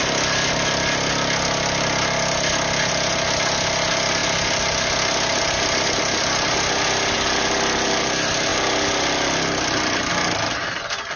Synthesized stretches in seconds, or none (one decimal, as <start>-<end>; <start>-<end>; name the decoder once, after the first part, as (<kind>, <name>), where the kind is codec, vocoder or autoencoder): none